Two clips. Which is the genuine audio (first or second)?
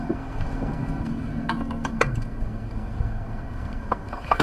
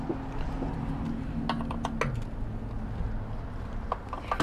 second